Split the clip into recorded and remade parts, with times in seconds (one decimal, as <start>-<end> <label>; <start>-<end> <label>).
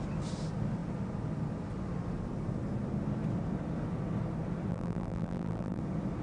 0.0-4.7 recorded; 4.7-5.8 remade; 5.8-6.2 recorded